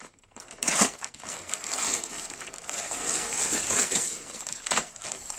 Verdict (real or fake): fake